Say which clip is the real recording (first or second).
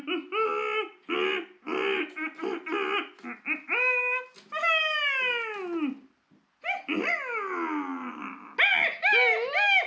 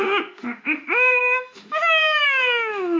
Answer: first